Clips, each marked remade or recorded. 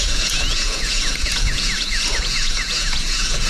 remade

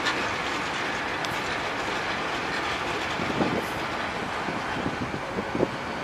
recorded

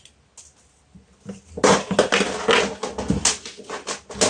recorded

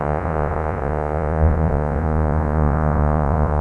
remade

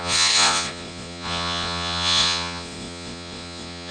remade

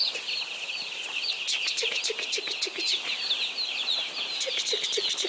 recorded